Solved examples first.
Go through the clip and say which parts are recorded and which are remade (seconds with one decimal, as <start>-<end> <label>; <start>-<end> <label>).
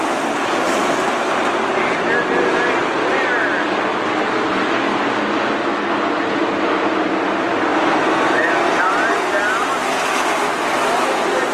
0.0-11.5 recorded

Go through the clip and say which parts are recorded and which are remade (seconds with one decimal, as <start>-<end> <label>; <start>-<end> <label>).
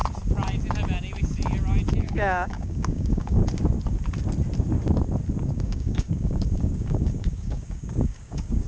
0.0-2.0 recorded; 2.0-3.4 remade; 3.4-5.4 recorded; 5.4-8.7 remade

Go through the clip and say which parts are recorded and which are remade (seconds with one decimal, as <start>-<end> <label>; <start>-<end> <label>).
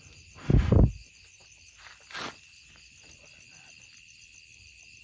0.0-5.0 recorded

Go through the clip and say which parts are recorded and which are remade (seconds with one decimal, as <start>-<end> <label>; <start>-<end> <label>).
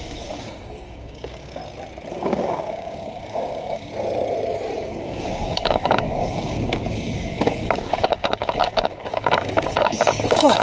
0.0-1.6 remade; 1.6-2.1 recorded; 2.1-3.9 remade; 3.9-4.8 recorded; 4.8-10.6 remade